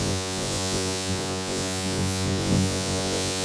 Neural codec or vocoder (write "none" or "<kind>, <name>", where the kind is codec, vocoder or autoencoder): vocoder, Vocos